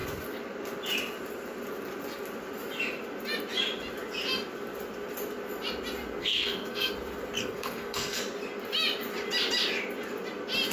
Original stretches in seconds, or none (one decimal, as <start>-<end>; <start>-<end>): 0.0-6.2; 6.9-7.4; 8.2-10.7